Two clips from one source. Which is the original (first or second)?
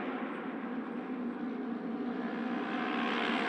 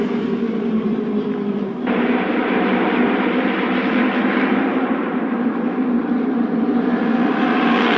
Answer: first